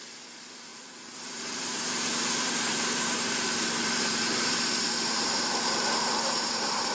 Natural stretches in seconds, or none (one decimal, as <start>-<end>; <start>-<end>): none